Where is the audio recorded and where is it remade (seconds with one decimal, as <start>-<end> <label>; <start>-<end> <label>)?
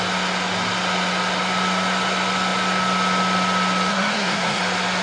0.0-3.9 recorded; 3.9-4.6 remade; 4.6-5.0 recorded